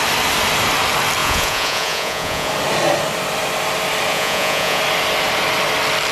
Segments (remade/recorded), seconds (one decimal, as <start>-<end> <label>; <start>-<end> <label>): 0.0-1.2 recorded; 1.2-2.5 remade; 2.5-4.1 recorded; 4.1-4.8 remade; 4.8-6.1 recorded